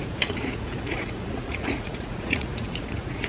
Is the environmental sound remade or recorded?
remade